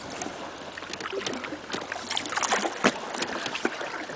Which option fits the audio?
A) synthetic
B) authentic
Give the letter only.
B